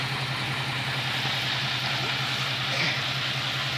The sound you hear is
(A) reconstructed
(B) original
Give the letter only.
B